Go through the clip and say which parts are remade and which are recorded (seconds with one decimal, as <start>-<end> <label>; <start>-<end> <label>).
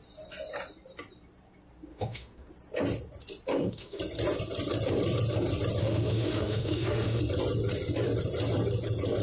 0.0-1.9 recorded; 1.9-2.5 remade; 2.5-3.5 recorded; 3.5-4.0 remade; 4.0-5.8 recorded; 5.8-7.2 remade; 7.2-9.2 recorded